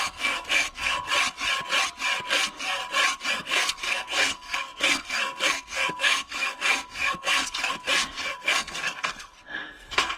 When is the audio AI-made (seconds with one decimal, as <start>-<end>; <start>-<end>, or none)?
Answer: 0.0-1.1; 2.3-2.8; 3.3-10.2